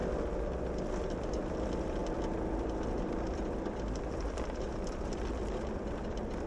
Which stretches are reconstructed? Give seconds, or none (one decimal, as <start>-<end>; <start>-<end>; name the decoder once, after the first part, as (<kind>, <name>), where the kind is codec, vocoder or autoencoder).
1.0-6.5 (vocoder, BigVGAN v2)